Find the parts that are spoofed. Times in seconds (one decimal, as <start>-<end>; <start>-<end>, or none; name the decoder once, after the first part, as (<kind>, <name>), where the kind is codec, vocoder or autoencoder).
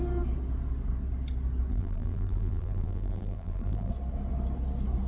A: 1.7-3.9 (vocoder, BigVGAN v2)